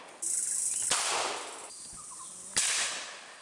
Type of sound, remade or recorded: recorded